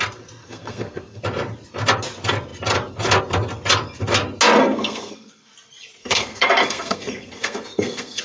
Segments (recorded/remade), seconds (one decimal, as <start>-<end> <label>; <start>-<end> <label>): 0.0-0.4 recorded; 0.4-1.2 remade; 1.2-4.6 recorded; 4.6-5.5 remade; 5.5-6.0 recorded; 6.0-8.2 remade